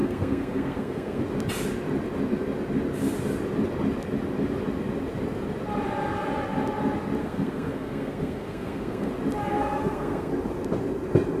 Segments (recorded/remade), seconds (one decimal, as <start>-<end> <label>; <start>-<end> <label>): 0.0-1.2 remade; 1.2-7.2 recorded; 7.2-9.1 remade; 9.1-9.5 recorded; 9.5-10.3 remade; 10.3-11.4 recorded